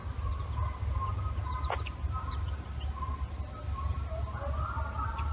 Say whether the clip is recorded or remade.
recorded